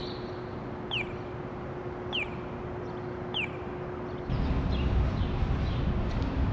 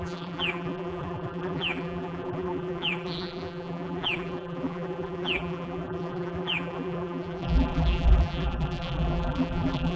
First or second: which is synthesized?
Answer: second